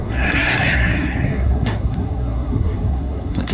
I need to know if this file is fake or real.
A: fake